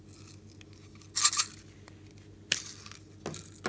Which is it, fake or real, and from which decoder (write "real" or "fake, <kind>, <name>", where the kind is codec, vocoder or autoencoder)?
real